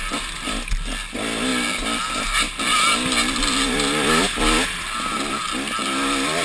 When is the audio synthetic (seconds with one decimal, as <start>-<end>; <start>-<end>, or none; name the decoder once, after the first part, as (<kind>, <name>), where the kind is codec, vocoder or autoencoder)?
none